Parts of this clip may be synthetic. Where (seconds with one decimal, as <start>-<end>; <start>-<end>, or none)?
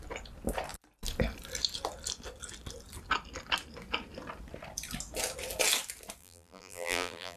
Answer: 6.2-7.4